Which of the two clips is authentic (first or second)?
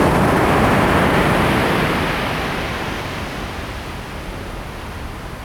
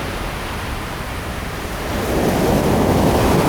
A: first